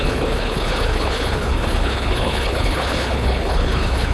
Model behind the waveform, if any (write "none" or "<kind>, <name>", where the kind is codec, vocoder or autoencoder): codec, HILCodec